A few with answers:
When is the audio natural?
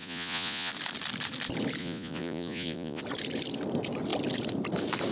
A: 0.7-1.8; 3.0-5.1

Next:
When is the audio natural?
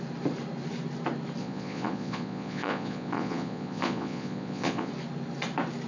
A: 0.0-1.4; 4.9-5.9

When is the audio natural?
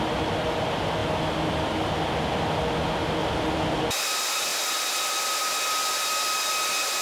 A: 0.0-3.2; 3.8-7.0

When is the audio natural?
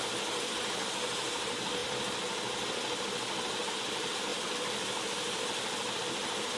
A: 0.0-6.6